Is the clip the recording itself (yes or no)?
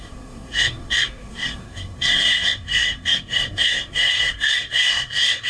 no